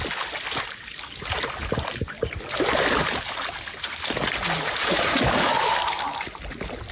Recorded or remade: recorded